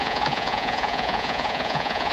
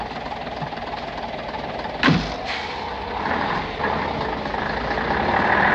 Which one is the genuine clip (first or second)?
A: second